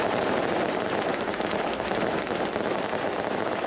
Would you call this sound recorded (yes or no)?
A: yes